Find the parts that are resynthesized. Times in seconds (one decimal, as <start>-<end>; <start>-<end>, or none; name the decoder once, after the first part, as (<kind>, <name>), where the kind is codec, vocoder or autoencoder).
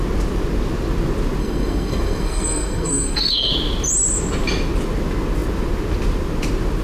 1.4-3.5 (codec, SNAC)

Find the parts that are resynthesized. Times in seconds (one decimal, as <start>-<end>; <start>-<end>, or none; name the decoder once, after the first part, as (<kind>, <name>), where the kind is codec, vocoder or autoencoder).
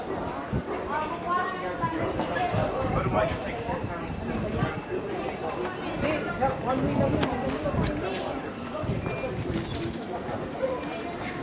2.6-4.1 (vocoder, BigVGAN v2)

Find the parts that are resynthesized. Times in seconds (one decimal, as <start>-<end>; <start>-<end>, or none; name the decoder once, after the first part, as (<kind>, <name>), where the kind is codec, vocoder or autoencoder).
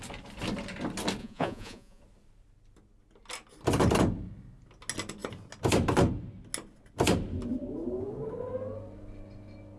1.2-2.0 (vocoder, Vocos)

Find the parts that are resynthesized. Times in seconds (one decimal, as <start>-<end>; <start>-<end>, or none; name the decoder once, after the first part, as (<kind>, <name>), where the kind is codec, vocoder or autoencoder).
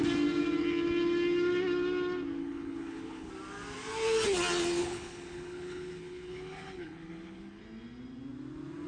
2.4-3.3 (codec, HILCodec); 4.8-7.6